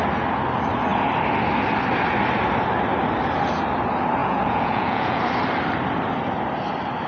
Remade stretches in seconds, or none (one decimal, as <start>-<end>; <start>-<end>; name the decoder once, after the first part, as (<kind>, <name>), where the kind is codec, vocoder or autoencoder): 4.2-5.2 (vocoder, Vocos)